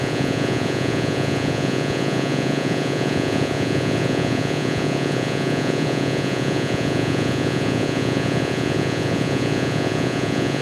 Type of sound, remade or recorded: remade